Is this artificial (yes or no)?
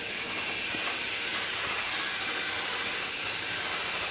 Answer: yes